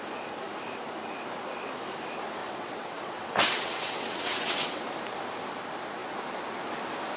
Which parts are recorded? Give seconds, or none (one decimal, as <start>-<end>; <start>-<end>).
0.0-2.4; 4.8-7.2